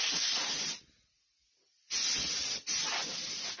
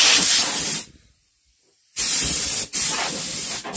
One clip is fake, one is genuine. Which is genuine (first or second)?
first